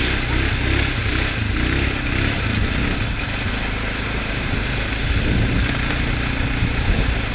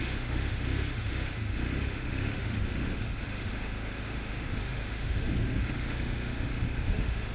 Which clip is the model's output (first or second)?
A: second